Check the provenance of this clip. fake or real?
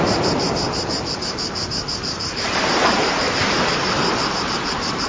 fake